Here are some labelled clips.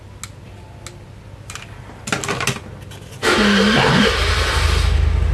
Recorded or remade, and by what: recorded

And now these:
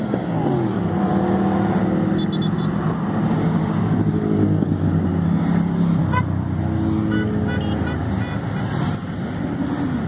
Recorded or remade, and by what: recorded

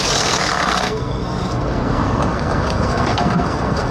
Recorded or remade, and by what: remade, codec, SNAC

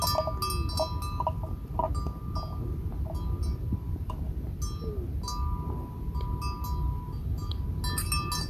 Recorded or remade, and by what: recorded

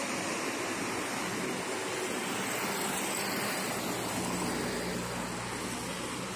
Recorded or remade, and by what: recorded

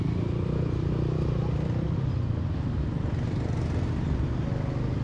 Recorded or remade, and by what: recorded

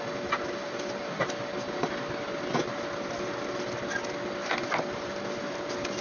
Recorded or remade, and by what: recorded